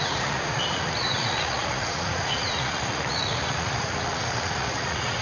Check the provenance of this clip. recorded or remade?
remade